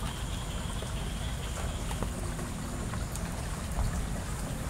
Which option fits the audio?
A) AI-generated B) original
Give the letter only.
B